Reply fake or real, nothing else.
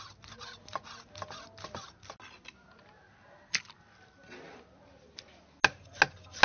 real